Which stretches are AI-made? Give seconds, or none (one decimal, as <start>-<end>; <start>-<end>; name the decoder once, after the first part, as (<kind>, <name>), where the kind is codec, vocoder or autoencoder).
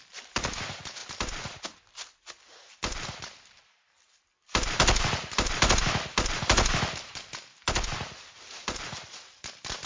none